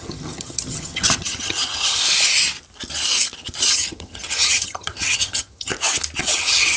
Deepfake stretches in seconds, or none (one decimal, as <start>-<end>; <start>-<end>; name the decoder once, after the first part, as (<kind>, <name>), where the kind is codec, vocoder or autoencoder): 0.0-2.0 (vocoder, HiFi-GAN); 3.7-5.7; 6.2-6.8